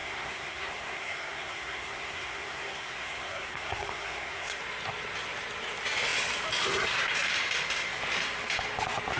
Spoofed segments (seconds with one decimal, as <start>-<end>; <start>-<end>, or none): 0.0-4.6

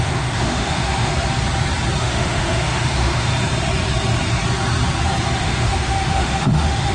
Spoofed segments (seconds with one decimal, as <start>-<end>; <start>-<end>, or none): 0.0-1.1; 2.0-3.3; 5.4-6.9